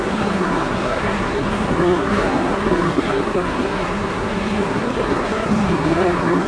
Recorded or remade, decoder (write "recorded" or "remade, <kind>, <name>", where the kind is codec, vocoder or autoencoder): remade, codec, SNAC